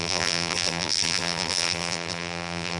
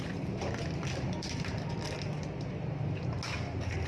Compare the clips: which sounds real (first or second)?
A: second